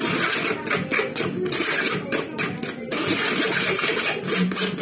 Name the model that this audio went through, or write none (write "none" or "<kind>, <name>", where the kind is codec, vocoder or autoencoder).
none